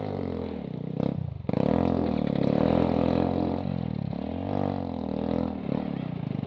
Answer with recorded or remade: recorded